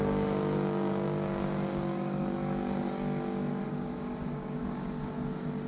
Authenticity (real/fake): fake